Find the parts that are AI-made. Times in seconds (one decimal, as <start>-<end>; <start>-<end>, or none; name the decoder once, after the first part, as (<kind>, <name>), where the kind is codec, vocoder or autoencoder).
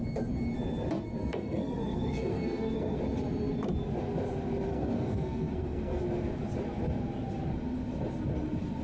1.2-3.0 (codec, SNAC); 4.7-6.0